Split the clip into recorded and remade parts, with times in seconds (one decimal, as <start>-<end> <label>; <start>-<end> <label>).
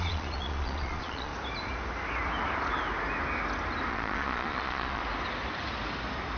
0.0-1.3 remade; 1.3-3.9 recorded; 3.9-5.0 remade; 5.0-6.4 recorded